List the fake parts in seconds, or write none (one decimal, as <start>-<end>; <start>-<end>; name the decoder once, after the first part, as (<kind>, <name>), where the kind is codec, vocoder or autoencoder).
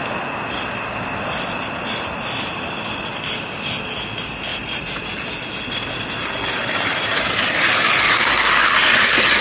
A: 4.5-5.0 (vocoder, BigVGAN v2); 6.6-7.5